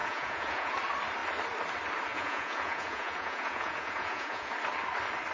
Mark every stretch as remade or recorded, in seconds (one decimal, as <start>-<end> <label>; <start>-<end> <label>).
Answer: 0.0-0.7 remade; 0.7-2.1 recorded; 2.1-4.5 remade; 4.5-5.3 recorded